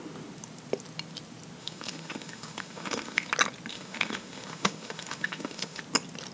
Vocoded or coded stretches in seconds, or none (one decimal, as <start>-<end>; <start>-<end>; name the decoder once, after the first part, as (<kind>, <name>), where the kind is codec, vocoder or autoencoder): 1.6-3.3 (autoencoder, DAC-VAE); 3.7-5.8